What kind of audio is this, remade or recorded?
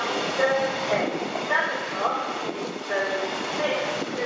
recorded